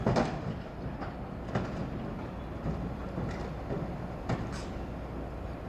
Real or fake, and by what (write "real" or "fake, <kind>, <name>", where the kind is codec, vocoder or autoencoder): real